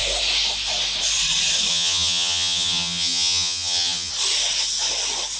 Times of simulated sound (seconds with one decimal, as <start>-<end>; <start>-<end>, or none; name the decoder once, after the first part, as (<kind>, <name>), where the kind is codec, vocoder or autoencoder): 1.7-4.1 (vocoder, HiFi-GAN)

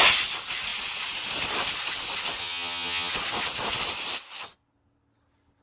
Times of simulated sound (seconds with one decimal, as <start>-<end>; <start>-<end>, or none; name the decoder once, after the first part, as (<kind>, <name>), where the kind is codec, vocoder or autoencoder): 2.4-3.1 (vocoder, HiFi-GAN)

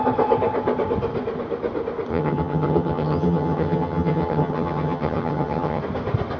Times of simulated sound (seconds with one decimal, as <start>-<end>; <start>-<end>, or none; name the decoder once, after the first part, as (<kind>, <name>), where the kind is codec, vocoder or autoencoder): 2.1-5.8 (vocoder, HiFi-GAN)

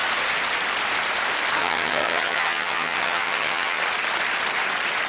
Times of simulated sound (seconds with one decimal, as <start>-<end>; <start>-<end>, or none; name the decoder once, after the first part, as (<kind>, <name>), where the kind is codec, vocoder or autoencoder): 1.6-3.8 (vocoder, HiFi-GAN)

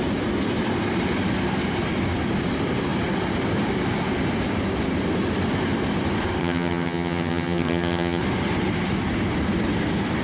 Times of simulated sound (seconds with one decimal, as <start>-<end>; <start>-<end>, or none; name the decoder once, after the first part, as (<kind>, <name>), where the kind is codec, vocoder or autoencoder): 6.4-8.2 (vocoder, HiFi-GAN)

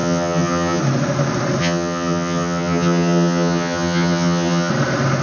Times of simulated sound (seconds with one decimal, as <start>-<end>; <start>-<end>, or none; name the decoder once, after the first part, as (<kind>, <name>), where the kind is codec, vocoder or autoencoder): 0.0-0.8 (vocoder, HiFi-GAN); 1.6-4.7